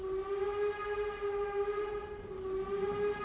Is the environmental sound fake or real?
real